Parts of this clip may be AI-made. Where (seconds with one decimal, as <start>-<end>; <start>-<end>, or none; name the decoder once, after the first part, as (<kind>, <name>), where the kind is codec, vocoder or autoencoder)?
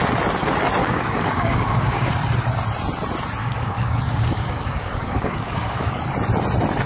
0.8-2.1 (codec, DAC); 3.4-6.0